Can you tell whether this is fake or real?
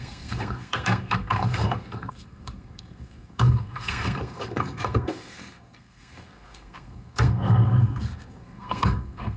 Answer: fake